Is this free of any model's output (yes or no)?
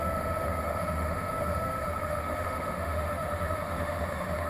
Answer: no